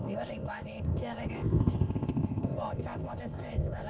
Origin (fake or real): fake